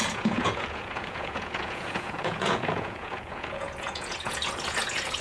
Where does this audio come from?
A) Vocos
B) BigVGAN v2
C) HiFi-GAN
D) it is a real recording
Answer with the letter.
A